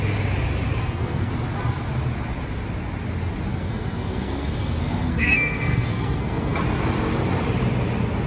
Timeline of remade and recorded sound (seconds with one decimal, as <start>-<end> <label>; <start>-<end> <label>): 0.0-0.8 recorded; 0.8-1.3 remade; 1.3-3.5 recorded; 3.5-6.6 remade; 6.6-8.3 recorded